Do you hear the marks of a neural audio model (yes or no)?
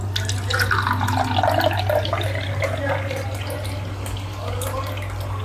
no